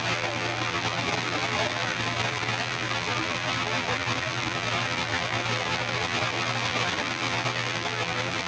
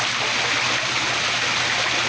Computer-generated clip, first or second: first